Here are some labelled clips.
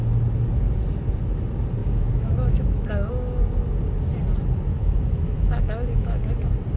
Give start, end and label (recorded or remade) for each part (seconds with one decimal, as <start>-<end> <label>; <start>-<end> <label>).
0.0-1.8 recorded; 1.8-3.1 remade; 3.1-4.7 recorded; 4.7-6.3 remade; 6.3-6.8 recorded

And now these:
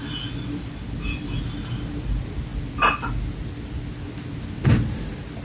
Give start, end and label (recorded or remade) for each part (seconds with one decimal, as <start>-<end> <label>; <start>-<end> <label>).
0.0-5.4 recorded

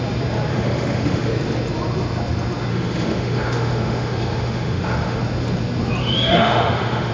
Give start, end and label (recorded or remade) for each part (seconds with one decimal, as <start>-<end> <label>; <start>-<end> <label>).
0.0-0.5 recorded; 0.5-1.3 remade; 1.3-2.7 recorded; 2.7-5.2 remade; 5.2-6.0 recorded; 6.0-7.1 remade

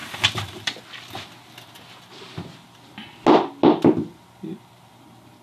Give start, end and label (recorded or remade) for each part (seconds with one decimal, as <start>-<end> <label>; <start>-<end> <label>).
0.0-0.8 remade; 0.8-5.4 recorded